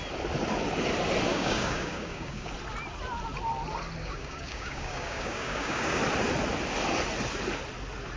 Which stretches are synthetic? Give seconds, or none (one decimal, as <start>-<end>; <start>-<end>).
1.3-2.5; 4.0-6.0